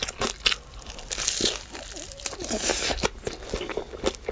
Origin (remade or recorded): recorded